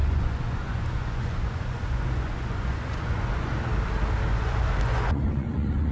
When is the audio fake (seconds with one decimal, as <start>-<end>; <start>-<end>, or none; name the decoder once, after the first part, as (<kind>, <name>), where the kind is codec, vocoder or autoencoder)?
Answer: 0.0-3.5 (vocoder, Vocos); 4.3-5.9